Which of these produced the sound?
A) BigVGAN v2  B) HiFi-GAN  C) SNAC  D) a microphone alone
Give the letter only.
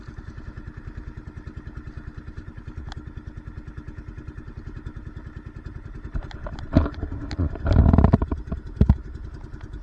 D